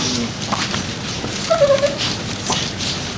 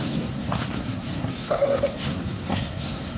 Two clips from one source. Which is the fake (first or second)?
second